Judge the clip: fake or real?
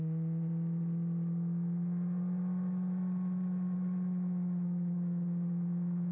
real